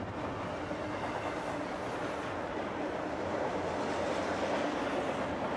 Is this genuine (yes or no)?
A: yes